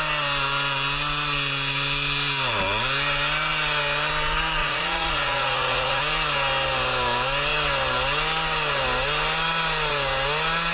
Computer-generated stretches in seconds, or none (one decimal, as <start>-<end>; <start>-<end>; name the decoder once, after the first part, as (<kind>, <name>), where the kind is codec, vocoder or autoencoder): 4.6-6.0 (vocoder, Vocos)